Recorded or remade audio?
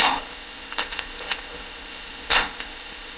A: remade